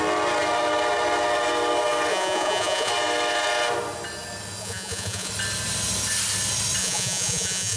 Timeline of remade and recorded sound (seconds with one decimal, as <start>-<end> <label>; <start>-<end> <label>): 0.0-2.1 recorded; 2.1-2.9 remade; 2.9-4.6 recorded; 4.6-5.3 remade; 5.3-6.8 recorded; 6.8-7.8 remade